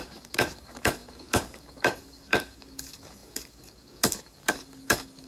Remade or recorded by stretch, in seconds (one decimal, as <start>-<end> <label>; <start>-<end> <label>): 0.0-5.3 remade